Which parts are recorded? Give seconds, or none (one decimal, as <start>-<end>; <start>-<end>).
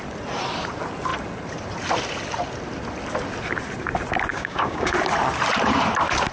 0.0-4.3; 4.9-6.3